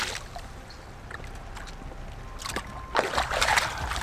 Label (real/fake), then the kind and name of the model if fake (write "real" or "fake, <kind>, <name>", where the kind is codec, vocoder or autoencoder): real